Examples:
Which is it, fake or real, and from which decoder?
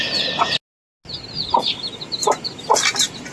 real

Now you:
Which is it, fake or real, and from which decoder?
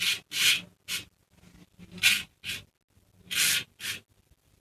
real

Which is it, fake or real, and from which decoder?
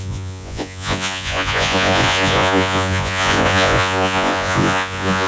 fake, vocoder, Vocos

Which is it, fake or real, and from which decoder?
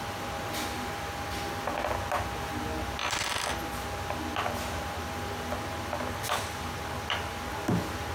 real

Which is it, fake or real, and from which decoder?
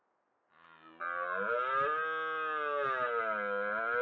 real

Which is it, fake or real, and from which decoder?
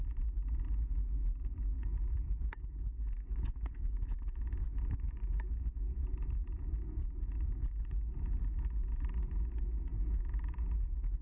fake, vocoder, Vocos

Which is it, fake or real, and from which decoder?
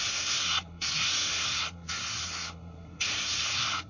fake, codec, SNAC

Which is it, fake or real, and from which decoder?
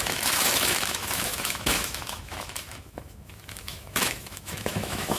fake, autoencoder, DAC-VAE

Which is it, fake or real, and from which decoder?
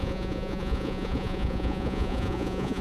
fake, vocoder, Vocos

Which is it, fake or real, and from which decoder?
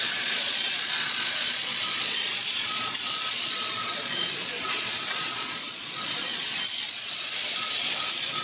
fake, vocoder, Vocos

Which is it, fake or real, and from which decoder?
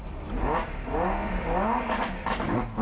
real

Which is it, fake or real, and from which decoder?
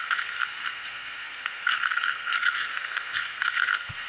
fake, codec, SNAC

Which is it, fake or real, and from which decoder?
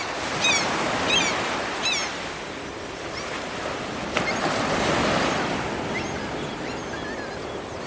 real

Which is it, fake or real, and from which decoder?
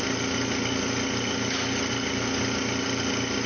real